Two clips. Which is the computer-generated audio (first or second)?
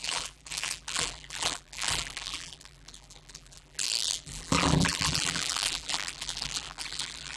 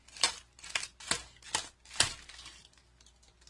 first